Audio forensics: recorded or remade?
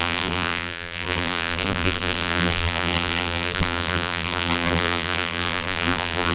remade